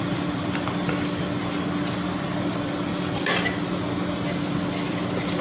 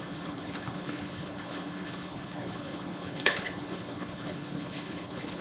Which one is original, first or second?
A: first